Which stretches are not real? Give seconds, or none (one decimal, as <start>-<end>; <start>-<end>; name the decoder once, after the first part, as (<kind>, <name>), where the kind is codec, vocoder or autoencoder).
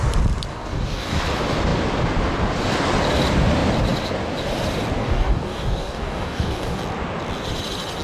0.5-1.2 (codec, DAC); 5.0-6.8